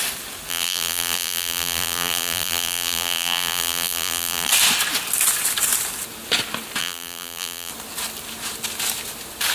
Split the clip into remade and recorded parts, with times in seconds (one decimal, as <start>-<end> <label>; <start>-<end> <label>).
0.0-0.5 recorded; 0.5-4.5 remade; 4.5-6.8 recorded; 6.8-7.7 remade; 7.7-9.5 recorded